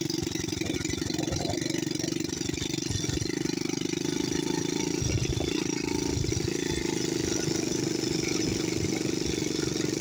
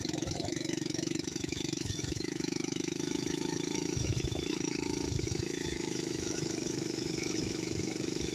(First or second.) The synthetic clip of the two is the second